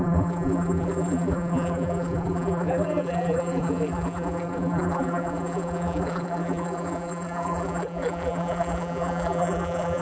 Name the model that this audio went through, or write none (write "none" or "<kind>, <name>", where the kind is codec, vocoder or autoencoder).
vocoder, BigVGAN v2